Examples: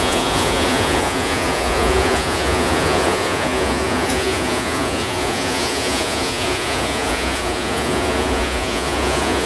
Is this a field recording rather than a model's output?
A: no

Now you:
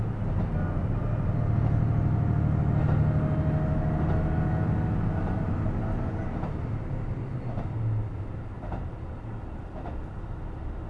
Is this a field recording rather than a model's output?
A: yes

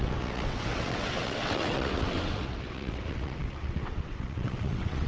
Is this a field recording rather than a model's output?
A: no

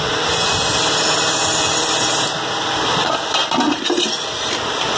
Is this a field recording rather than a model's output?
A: yes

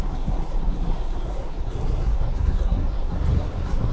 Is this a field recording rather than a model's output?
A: no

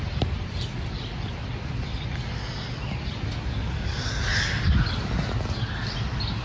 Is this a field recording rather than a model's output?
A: yes